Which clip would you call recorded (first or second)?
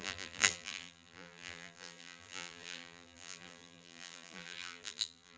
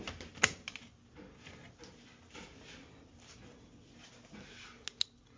second